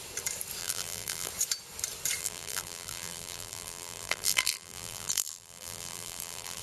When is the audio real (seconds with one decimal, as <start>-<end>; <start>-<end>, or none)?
0.0-0.6; 1.3-2.2